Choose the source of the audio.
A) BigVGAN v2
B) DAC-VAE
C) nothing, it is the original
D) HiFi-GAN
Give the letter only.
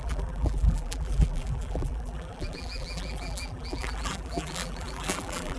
A